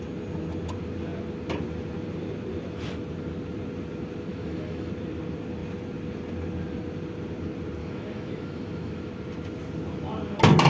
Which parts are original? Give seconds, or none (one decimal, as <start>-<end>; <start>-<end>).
0.0-4.3; 4.9-7.8; 9.1-10.7